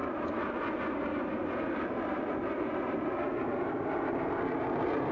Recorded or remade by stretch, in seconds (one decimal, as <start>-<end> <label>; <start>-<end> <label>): 0.0-5.1 recorded